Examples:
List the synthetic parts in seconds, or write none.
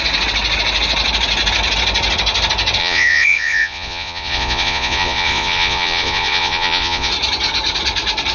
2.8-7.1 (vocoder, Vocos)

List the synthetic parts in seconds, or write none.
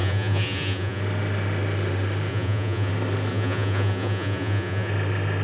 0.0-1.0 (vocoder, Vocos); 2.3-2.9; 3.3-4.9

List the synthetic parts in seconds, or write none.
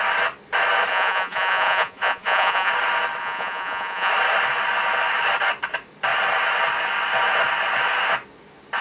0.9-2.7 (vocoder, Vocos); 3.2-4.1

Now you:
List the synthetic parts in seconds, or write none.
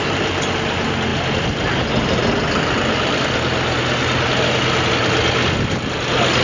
none